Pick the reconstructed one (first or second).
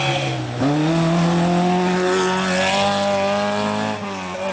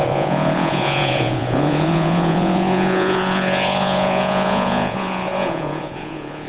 second